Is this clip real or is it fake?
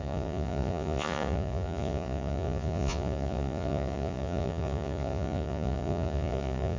fake